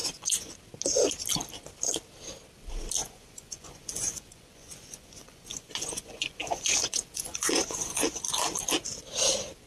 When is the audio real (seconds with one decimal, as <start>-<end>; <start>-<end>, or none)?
0.5-3.0; 8.2-9.7